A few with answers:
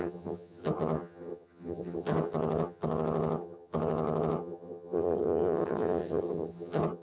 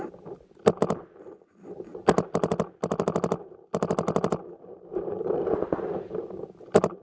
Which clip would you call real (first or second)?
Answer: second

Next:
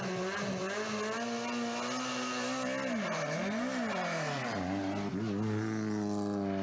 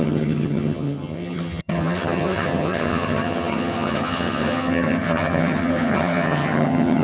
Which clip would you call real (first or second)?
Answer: first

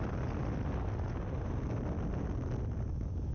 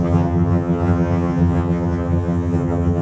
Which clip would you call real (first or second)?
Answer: first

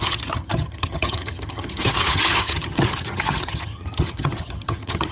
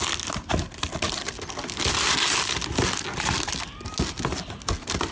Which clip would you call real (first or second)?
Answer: second